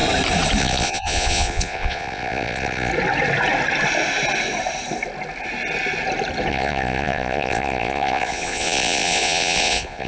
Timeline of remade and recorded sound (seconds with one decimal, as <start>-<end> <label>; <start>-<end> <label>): 0.0-0.6 recorded; 0.6-2.9 remade; 2.9-6.5 recorded; 6.5-10.1 remade